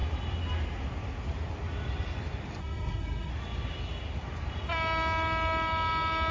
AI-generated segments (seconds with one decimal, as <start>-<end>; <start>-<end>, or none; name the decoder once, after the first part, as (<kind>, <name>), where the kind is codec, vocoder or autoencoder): 2.6-3.3 (codec, SNAC)